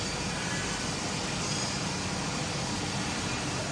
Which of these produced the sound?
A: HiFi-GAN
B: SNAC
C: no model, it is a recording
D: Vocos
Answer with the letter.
C